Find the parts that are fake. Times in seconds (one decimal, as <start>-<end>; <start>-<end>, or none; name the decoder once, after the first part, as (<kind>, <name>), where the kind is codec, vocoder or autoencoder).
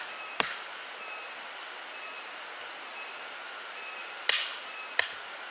none